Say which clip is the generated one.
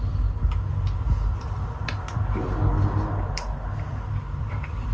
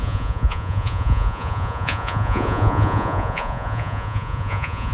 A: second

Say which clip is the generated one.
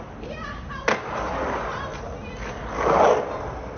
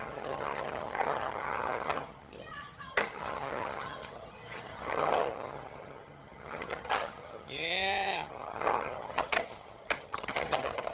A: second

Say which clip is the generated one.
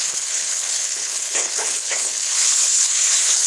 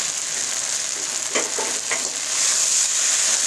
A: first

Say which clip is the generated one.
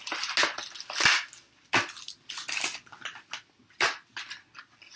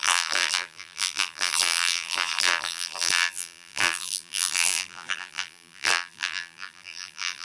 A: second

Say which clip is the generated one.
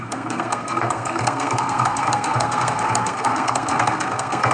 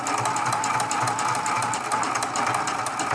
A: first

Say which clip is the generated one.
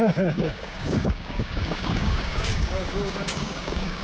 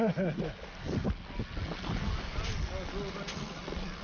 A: first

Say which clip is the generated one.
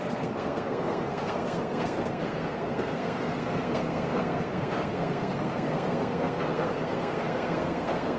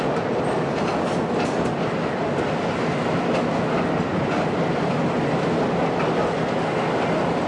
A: first